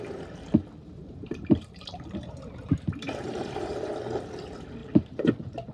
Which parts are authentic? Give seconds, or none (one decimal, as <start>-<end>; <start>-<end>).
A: 0.0-0.8; 3.9-4.8; 5.3-5.7